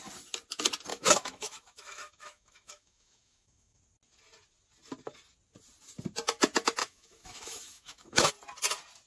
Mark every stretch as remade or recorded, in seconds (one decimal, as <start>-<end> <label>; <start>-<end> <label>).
0.0-0.9 recorded; 0.9-3.8 remade; 3.8-6.8 recorded; 6.8-8.3 remade; 8.3-9.1 recorded

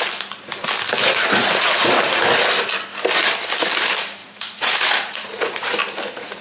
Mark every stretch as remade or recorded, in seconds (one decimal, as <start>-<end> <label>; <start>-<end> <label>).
0.0-1.0 recorded; 1.0-2.0 remade; 2.0-4.2 recorded; 4.2-5.7 remade; 5.7-6.4 recorded